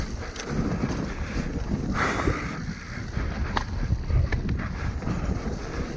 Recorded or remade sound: recorded